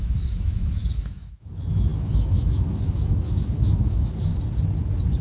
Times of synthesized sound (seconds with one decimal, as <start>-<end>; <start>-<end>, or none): 0.0-4.3